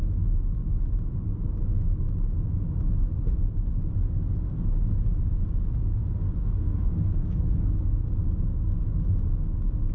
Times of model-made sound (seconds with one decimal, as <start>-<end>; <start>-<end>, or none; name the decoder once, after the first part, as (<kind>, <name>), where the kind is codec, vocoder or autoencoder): 6.4-8.0 (codec, SNAC)